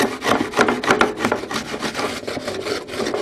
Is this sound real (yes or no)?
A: yes